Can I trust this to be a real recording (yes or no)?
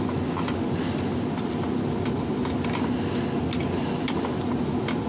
yes